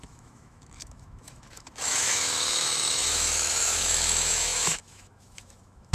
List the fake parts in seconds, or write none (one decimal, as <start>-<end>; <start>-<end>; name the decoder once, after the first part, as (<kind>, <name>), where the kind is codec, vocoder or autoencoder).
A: 0.0-5.9 (autoencoder, DAC-VAE)